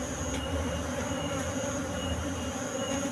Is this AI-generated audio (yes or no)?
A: no